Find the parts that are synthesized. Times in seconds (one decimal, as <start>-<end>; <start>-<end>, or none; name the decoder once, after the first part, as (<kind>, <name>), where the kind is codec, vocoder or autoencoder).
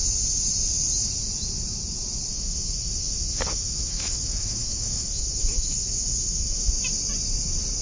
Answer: 2.3-6.7 (autoencoder, DAC-VAE)